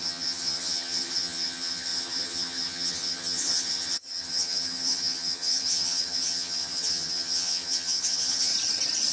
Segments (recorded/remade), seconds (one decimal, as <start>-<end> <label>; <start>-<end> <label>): 0.0-8.5 remade; 8.5-9.1 recorded